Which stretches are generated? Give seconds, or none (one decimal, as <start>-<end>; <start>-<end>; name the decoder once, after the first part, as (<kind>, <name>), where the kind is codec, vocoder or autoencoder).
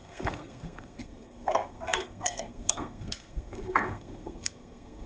0.0-5.1 (codec, SNAC)